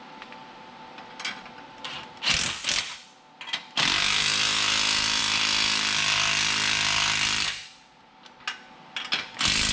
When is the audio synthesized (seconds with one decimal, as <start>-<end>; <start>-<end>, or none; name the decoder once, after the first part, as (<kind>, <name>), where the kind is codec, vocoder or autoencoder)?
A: none